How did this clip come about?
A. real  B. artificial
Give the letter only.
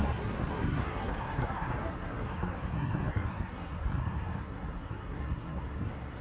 B